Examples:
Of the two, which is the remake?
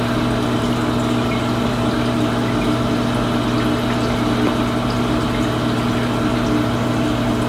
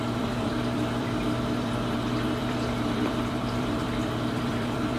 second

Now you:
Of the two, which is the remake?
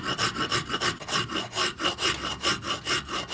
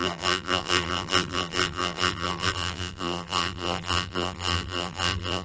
second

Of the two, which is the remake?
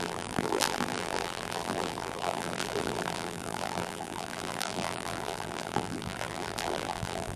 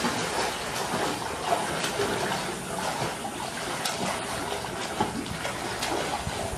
first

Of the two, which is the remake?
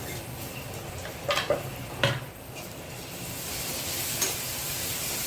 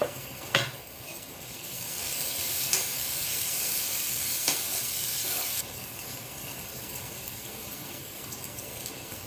second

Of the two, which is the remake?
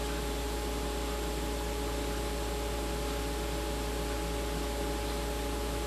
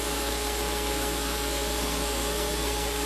second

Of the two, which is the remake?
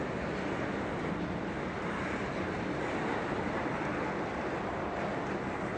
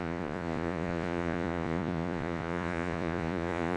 second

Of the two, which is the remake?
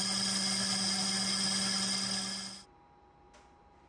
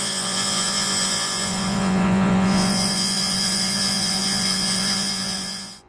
second